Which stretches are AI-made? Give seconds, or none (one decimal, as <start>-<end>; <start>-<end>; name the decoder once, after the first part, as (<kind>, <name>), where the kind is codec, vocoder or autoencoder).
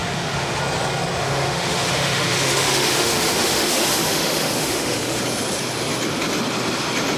0.0-0.6 (autoencoder, DAC-VAE); 1.2-5.2